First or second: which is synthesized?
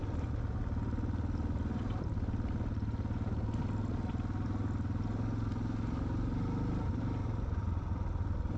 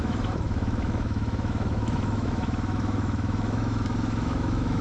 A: second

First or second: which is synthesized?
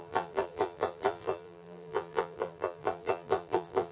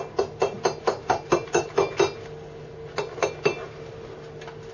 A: first